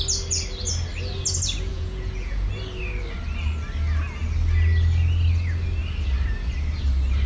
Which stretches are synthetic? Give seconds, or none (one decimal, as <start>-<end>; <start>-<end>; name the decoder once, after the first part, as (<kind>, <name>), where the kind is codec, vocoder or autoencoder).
1.7-2.5 (vocoder, Vocos)